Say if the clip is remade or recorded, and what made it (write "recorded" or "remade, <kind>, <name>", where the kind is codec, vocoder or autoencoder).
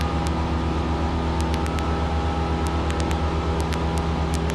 recorded